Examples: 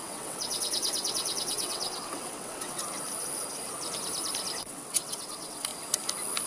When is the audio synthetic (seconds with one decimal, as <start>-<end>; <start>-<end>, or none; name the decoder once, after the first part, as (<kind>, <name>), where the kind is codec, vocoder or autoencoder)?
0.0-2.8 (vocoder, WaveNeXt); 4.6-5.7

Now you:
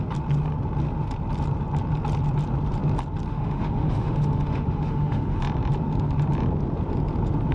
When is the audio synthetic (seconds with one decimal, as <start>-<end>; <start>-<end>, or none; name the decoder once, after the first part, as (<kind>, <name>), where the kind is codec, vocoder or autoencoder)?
3.3-5.4 (autoencoder, DAC-VAE)

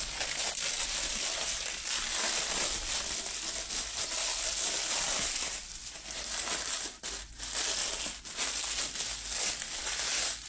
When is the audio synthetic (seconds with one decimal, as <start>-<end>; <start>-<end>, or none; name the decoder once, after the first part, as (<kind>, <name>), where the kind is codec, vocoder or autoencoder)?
none